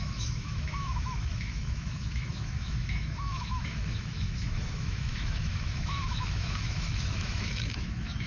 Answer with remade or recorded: remade